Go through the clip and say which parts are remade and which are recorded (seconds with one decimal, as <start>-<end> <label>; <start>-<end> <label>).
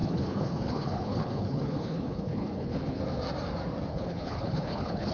0.0-3.0 remade; 3.0-3.9 recorded; 3.9-5.1 remade